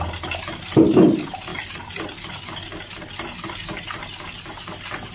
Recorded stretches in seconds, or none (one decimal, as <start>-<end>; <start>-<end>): 0.0-5.1